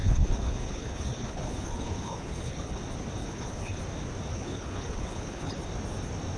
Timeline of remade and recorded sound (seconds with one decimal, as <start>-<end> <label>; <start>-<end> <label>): 0.0-2.8 remade; 2.8-3.2 recorded; 3.2-3.8 remade; 3.8-4.3 recorded; 4.3-5.6 remade; 5.6-6.4 recorded